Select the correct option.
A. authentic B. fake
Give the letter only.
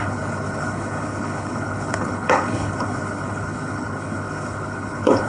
B